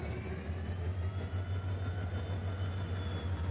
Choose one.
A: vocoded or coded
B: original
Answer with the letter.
B